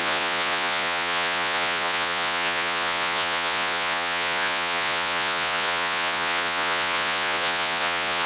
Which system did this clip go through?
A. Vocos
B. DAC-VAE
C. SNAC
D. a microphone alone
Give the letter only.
A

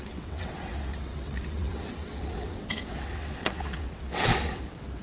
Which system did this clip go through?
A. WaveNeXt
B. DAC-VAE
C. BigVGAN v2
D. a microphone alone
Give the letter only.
A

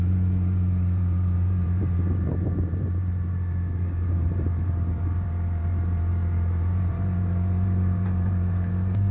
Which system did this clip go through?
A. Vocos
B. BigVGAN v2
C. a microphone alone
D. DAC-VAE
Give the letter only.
B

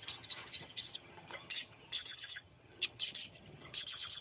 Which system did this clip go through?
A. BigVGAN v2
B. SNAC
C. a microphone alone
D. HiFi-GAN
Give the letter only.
D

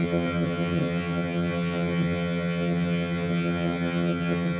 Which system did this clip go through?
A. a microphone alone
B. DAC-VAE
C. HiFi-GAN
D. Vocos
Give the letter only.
C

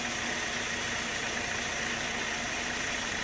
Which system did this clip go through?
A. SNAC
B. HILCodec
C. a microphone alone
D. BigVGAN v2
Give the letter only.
C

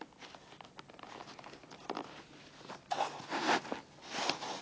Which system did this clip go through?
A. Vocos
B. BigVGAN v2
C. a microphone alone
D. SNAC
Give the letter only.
C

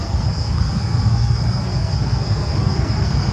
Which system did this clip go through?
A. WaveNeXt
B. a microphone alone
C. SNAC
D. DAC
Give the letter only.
C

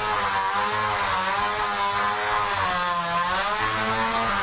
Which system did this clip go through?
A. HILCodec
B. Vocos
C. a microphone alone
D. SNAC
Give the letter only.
C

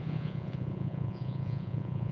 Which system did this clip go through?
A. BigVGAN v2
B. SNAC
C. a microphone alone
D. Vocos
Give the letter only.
D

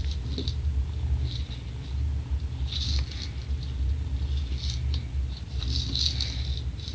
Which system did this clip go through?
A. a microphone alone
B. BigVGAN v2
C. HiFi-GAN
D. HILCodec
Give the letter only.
A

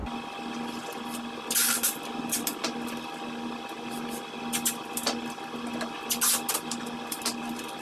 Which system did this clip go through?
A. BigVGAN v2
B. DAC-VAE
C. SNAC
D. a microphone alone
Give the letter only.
D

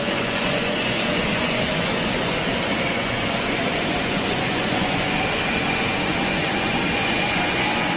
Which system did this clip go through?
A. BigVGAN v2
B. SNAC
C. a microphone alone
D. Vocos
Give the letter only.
D